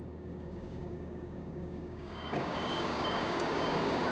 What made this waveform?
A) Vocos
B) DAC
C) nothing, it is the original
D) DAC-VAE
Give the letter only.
B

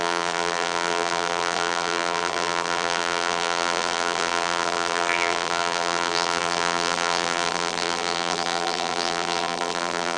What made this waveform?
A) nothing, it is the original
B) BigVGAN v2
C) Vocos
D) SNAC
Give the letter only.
B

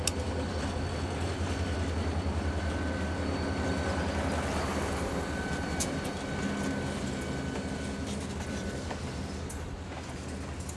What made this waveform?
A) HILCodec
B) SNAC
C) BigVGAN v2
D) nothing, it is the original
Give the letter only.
D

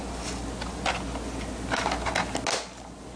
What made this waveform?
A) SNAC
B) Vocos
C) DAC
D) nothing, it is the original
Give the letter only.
D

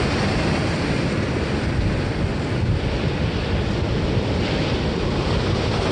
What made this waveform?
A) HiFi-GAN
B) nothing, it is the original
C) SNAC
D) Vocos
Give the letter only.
B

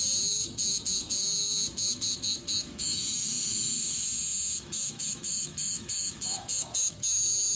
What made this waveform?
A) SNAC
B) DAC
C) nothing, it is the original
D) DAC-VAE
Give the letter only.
D